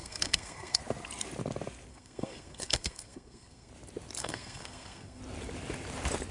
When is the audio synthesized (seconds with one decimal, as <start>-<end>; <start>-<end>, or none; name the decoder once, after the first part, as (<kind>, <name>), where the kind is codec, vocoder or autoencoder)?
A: 0.0-0.8 (codec, SNAC); 1.9-3.7; 4.2-5.2